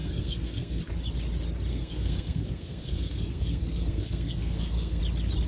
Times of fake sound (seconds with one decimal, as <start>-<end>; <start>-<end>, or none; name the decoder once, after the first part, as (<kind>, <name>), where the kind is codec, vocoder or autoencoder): 0.0-0.8 (codec, SNAC); 1.7-5.0